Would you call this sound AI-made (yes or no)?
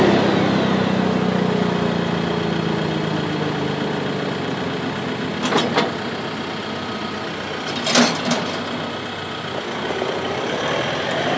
no